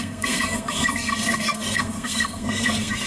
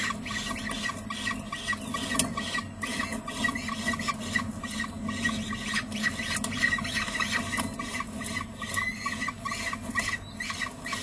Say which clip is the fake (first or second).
first